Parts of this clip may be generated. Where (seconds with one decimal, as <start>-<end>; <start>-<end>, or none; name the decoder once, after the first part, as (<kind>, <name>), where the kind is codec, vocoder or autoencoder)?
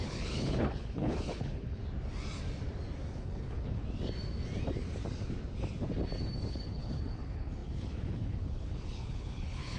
0.0-1.8 (codec, HILCodec); 3.1-3.8; 6.5-9.8